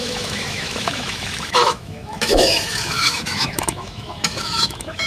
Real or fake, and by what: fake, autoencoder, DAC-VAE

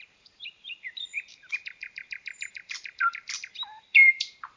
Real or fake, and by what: fake, vocoder, BigVGAN v2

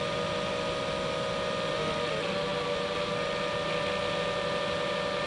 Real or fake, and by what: real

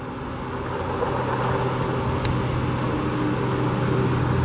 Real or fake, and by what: real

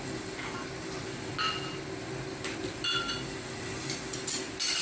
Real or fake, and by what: real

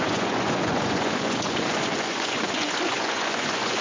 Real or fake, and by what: fake, vocoder, Vocos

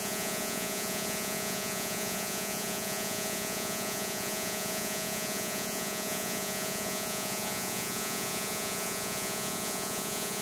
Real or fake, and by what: fake, vocoder, Vocos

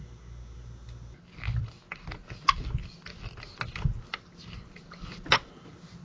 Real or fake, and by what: real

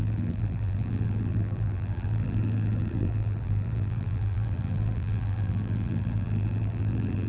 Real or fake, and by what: fake, vocoder, BigVGAN v2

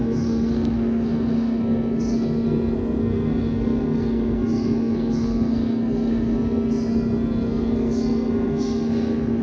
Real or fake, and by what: fake, codec, SNAC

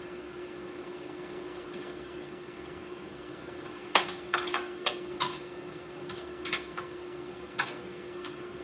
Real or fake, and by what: fake, codec, SNAC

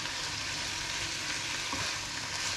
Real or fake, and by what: real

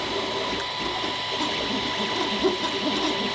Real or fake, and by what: real